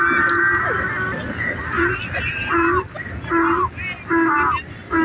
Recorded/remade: recorded